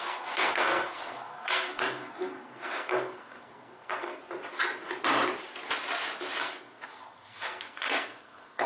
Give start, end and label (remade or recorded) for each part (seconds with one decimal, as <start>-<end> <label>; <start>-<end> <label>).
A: 0.0-4.2 remade; 4.2-6.4 recorded; 6.4-8.7 remade